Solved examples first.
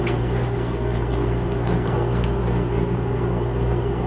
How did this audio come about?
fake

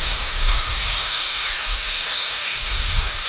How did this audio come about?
fake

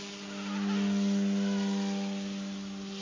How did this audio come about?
real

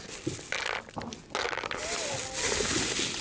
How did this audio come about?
real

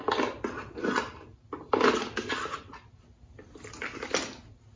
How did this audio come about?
real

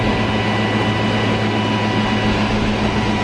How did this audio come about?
real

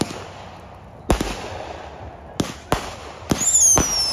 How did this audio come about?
real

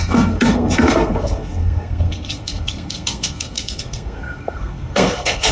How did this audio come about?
fake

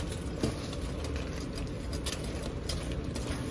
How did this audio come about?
real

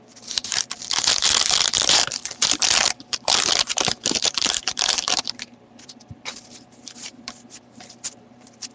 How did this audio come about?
fake